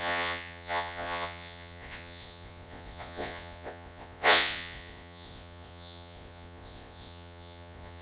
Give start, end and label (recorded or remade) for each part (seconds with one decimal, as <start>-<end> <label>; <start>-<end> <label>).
0.0-8.0 remade